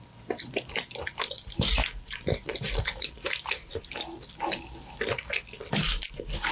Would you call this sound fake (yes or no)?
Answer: no